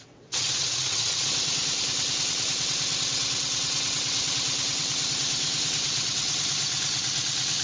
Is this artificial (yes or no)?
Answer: yes